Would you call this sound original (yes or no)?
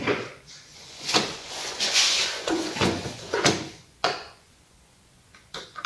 no